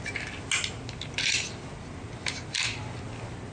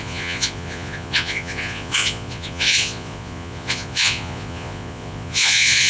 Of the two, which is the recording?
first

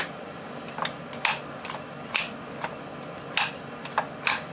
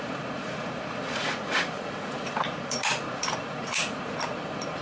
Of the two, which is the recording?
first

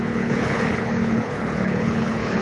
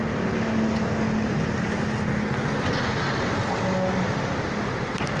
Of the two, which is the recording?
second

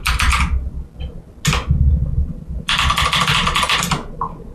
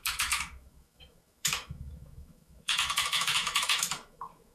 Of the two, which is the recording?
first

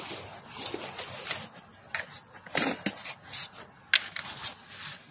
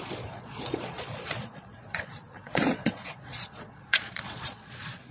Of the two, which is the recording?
first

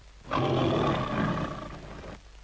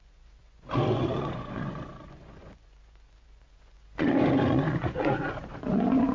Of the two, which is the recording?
first